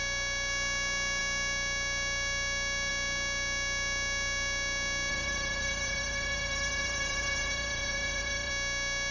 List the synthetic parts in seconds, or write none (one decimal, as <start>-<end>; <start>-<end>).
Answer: 5.1-8.5